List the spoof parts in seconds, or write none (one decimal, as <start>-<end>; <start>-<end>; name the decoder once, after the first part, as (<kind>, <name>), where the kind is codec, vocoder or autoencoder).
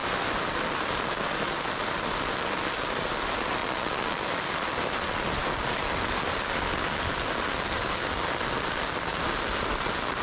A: 3.6-4.2 (vocoder, Vocos)